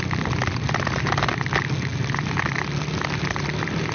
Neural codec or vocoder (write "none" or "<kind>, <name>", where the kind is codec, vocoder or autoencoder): none